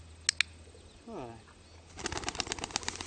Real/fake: real